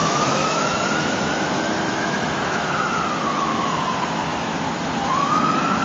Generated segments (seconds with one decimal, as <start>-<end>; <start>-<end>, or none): 0.0-4.5; 5.2-5.8